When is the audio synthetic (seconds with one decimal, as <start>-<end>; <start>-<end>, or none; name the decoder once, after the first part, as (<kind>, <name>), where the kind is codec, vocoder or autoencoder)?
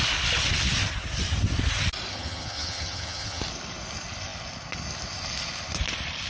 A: 2.1-3.4 (vocoder, HiFi-GAN)